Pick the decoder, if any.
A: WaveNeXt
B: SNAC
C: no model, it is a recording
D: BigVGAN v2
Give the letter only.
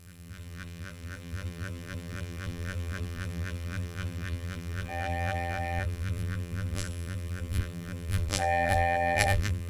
D